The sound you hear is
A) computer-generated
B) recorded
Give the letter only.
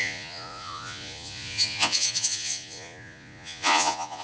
A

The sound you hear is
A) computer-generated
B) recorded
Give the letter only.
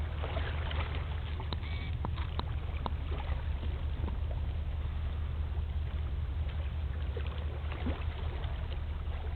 B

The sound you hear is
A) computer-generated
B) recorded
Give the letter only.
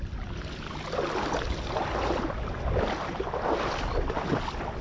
B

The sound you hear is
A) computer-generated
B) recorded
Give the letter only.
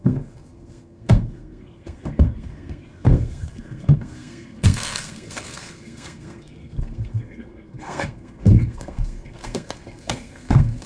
A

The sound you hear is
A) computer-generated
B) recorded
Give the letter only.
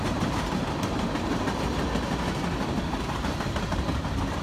B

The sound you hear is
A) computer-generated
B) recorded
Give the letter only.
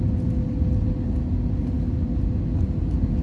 B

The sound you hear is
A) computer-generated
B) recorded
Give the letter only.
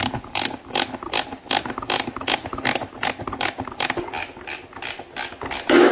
B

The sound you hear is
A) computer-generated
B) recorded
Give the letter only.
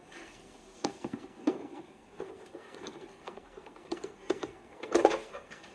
A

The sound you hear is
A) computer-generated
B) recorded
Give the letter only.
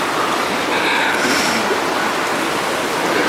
B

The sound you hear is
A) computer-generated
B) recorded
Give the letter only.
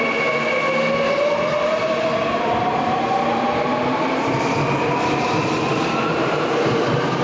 B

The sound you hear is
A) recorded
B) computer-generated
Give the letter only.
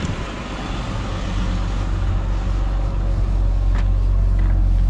A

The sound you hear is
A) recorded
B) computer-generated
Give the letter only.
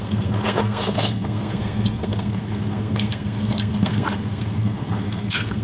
B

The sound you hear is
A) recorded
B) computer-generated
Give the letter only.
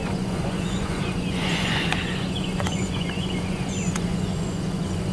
B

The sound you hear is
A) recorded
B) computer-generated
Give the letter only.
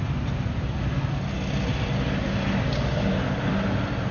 A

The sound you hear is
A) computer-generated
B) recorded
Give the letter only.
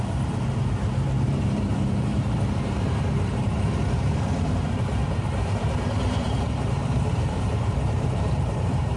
A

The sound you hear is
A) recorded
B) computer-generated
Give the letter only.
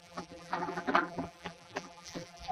B